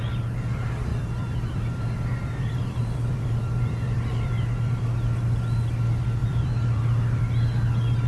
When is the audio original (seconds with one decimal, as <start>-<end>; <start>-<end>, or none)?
0.0-0.9; 4.8-6.2; 7.2-8.1